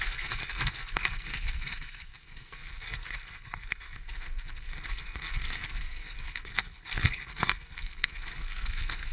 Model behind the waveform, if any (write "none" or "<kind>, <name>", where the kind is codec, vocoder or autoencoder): codec, SNAC